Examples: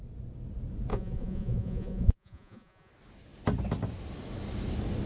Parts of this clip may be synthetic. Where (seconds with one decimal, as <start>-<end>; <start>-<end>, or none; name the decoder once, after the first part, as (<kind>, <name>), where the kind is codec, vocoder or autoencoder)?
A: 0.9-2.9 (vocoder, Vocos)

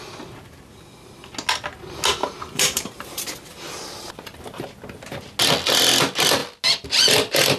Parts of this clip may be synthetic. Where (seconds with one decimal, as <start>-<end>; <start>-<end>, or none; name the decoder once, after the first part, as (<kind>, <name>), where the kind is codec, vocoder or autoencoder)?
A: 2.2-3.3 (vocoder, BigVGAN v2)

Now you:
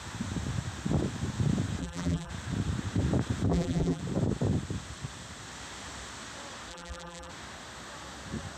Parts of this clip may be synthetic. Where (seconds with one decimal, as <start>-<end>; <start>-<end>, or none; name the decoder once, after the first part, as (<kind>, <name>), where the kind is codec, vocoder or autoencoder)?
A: 1.8-2.3 (vocoder, BigVGAN v2); 3.5-4.0; 6.7-7.3

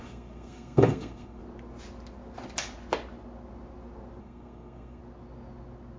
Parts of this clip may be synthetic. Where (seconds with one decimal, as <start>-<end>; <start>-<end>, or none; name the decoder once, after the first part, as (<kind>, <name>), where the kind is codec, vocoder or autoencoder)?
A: 0.0-1.4 (codec, SNAC); 4.2-5.0

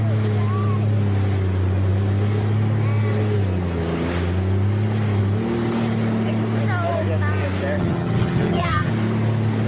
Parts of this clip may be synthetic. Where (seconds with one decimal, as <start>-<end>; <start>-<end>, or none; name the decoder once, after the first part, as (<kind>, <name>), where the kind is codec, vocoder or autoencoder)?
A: 7.8-8.9 (vocoder, HiFi-GAN)

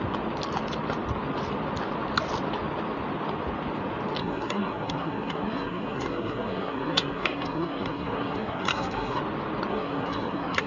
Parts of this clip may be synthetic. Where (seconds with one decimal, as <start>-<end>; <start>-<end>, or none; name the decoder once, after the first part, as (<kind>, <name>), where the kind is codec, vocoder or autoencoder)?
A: 4.2-9.2 (codec, SNAC); 9.7-10.7

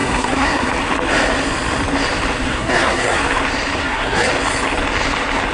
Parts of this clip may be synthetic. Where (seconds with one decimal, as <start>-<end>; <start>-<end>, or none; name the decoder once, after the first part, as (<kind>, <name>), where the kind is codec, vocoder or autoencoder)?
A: 0.0-0.7 (codec, SNAC); 2.5-3.2; 3.8-4.3

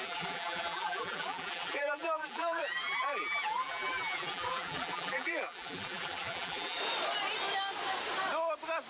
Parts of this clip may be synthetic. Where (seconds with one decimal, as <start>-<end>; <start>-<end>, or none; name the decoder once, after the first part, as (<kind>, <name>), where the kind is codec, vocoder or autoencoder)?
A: 0.0-6.8 (vocoder, BigVGAN v2)